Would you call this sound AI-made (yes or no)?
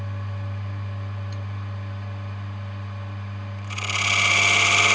no